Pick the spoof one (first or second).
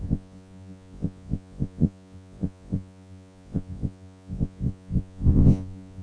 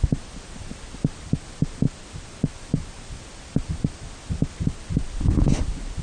first